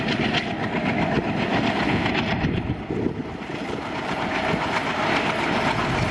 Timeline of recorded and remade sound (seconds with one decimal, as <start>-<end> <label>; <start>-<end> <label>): 0.0-6.1 recorded